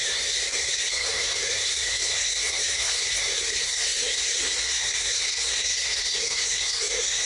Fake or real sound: fake